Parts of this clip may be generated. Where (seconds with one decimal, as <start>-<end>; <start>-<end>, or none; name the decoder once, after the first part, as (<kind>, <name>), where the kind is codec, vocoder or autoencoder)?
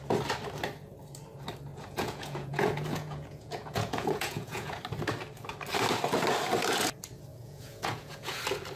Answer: 1.7-4.8 (vocoder, Vocos); 7.3-8.4